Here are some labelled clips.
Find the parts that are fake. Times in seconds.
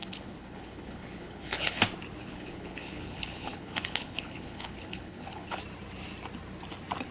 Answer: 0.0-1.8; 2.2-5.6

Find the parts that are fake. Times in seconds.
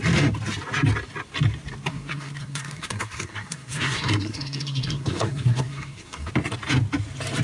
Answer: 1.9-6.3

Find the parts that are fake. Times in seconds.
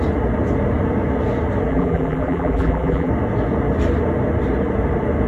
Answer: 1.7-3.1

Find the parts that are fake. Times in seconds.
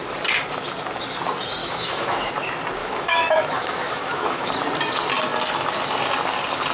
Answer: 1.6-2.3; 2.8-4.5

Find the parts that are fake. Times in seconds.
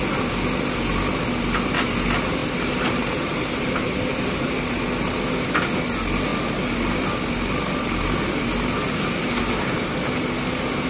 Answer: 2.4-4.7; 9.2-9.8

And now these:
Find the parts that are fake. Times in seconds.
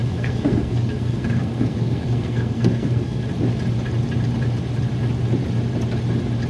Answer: 0.0-3.2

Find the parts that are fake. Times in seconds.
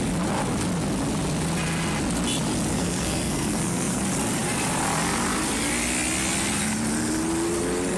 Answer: 2.7-4.0